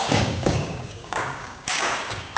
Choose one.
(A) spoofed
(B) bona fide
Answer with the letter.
A